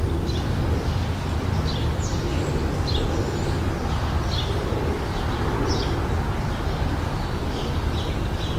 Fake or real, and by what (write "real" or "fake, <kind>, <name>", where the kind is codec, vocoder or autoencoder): real